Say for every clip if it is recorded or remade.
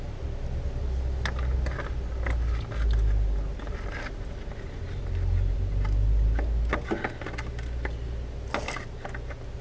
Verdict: recorded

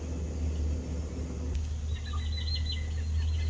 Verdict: recorded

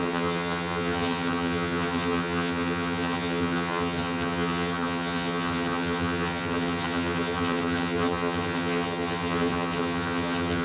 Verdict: remade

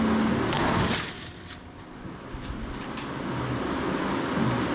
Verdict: recorded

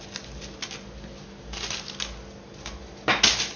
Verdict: recorded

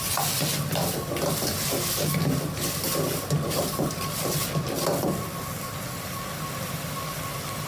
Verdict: recorded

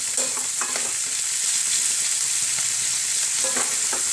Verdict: recorded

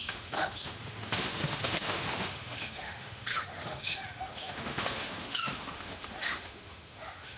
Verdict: remade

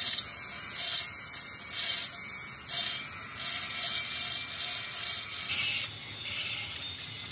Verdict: recorded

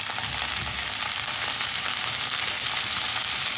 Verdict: recorded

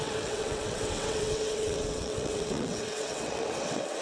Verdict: remade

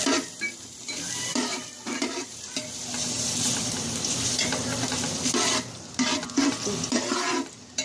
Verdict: remade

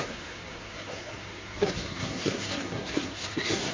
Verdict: remade